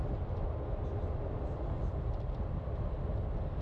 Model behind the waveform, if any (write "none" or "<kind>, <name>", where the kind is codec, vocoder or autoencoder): none